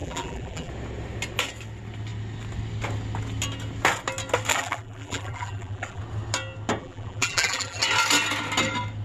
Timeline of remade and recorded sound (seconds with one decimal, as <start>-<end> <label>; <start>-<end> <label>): 0.0-0.7 remade; 0.7-4.5 recorded; 4.5-6.0 remade; 6.0-6.8 recorded; 6.8-7.8 remade; 7.8-9.0 recorded